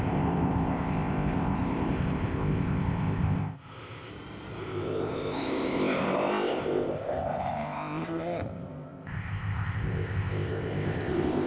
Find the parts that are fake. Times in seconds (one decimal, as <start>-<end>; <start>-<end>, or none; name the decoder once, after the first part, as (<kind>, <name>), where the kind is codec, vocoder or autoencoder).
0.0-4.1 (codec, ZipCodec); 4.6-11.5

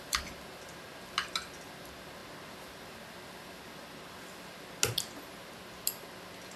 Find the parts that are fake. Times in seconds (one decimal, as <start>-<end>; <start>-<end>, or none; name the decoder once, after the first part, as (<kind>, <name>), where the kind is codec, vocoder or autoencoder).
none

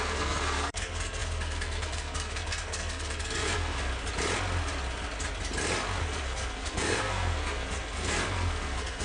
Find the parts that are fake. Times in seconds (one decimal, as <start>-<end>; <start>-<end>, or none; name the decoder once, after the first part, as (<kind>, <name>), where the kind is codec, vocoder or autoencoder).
0.0-3.9 (codec, SNAC); 6.0-9.0

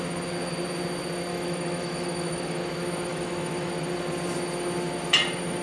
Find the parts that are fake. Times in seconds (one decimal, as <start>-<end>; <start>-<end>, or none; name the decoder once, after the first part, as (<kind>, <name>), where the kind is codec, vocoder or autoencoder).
1.3-2.6 (autoencoder, DAC-VAE); 3.1-3.7

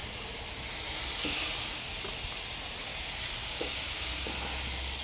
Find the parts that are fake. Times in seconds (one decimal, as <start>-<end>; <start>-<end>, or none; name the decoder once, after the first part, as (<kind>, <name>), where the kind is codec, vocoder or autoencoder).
3.4-4.2 (codec, DAC)